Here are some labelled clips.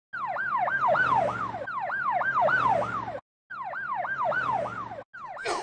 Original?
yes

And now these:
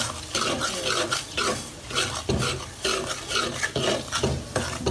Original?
yes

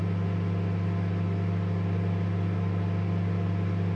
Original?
yes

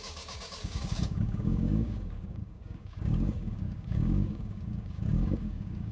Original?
no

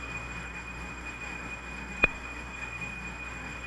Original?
no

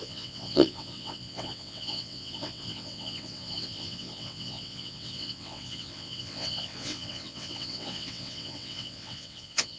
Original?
no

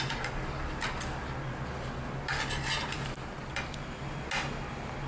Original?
yes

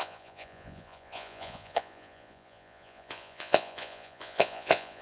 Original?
no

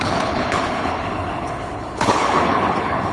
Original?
no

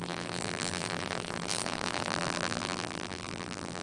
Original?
no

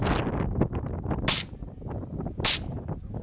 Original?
yes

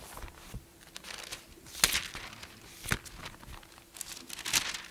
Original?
yes